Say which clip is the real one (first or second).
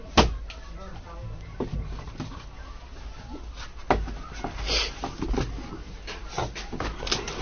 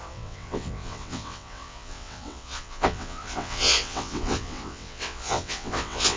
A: first